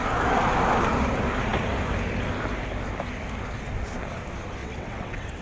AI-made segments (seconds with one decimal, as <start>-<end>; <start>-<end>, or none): 4.6-5.4